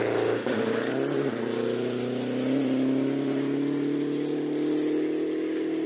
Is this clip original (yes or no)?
yes